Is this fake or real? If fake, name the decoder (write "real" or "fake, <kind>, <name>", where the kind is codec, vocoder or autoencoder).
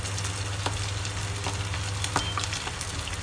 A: real